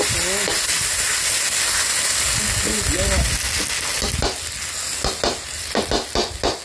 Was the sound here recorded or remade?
recorded